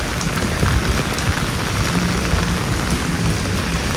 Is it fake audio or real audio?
real